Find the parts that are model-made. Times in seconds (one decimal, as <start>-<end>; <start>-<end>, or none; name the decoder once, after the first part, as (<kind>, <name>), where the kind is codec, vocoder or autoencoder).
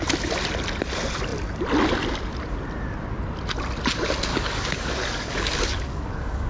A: 4.3-6.5 (codec, DAC)